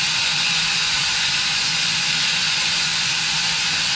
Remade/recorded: remade